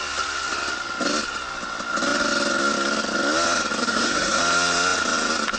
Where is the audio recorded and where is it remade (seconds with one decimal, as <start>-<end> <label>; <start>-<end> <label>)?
0.0-3.8 recorded; 3.8-4.4 remade; 4.4-5.6 recorded